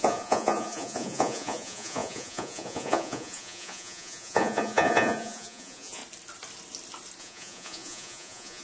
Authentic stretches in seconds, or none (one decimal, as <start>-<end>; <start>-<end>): 6.0-7.2